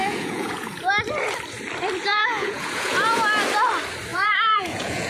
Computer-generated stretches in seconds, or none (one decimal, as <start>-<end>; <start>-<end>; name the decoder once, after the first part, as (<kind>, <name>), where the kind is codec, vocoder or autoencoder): 0.0-0.9 (vocoder, Vocos); 2.1-3.2; 4.1-5.1